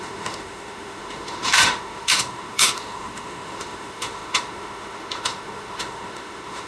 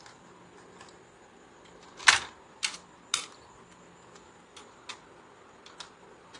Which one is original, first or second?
second